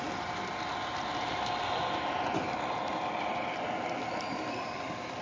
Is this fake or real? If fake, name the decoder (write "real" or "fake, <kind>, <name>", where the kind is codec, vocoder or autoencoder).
real